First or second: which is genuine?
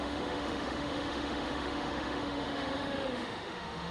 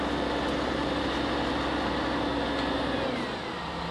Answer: second